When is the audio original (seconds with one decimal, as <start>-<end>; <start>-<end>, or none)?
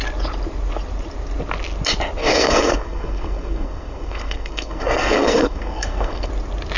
0.0-2.2; 6.3-6.8